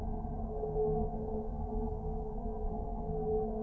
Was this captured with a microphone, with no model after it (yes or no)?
no